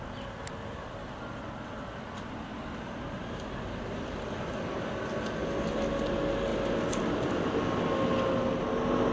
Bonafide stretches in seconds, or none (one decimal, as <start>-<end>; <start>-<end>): 0.0-9.1